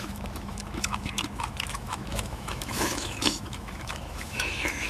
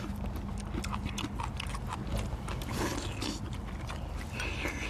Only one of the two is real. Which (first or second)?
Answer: second